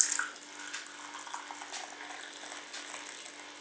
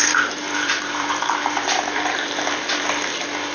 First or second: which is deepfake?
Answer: second